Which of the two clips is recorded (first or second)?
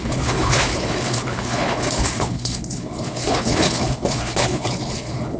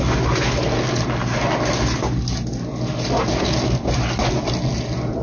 second